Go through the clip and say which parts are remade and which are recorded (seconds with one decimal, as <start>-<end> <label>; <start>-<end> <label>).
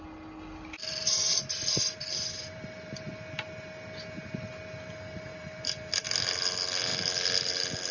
0.0-0.8 recorded; 0.8-3.1 remade; 3.1-5.3 recorded; 5.3-5.9 remade; 5.9-7.9 recorded